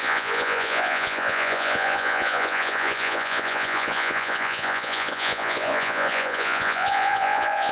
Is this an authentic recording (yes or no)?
no